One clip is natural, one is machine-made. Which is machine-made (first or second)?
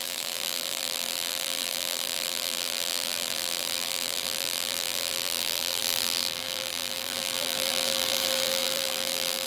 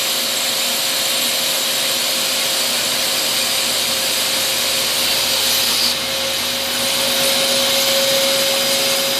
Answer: first